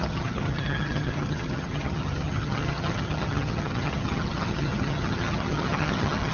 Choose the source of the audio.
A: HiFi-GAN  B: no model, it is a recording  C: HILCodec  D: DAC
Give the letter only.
A